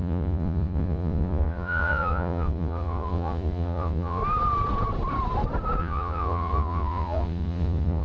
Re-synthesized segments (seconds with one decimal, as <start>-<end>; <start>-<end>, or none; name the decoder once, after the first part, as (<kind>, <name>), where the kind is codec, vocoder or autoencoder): 0.0-4.2 (vocoder, Vocos); 5.8-8.0